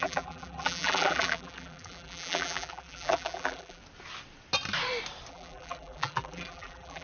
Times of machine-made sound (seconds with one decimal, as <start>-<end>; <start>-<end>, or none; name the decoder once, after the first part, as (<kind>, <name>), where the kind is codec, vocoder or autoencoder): 0.0-3.8 (vocoder, BigVGAN v2); 5.3-7.0